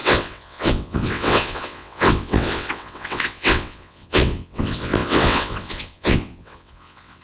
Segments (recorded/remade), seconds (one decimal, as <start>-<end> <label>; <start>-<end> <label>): 0.0-7.2 remade